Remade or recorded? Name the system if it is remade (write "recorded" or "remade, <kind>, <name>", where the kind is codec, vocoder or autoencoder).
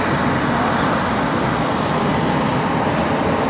recorded